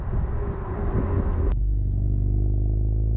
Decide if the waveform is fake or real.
real